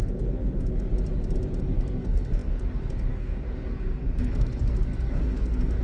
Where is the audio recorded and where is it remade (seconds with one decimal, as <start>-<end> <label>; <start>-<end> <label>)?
0.0-0.9 remade; 0.9-1.6 recorded; 1.6-5.8 remade